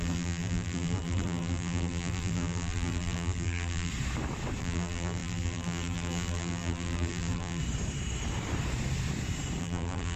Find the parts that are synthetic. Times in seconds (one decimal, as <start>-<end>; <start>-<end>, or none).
0.0-3.9; 4.6-7.6; 9.6-10.2